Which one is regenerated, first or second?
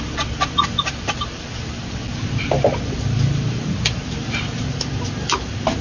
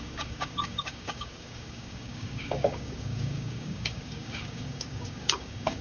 second